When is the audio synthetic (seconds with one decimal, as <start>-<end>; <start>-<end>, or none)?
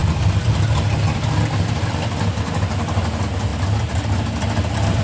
none